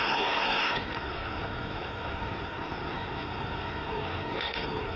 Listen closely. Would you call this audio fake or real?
fake